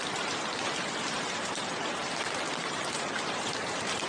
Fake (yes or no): yes